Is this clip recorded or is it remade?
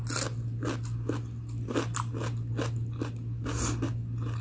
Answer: recorded